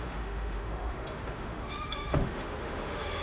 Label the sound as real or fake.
fake